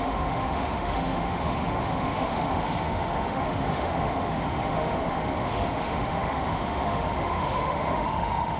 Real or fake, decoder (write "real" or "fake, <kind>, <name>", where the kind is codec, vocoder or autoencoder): fake, autoencoder, DAC-VAE